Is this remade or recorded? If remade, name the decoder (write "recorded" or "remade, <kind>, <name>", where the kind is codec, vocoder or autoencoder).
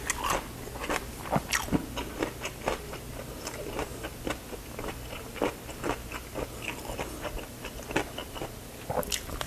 recorded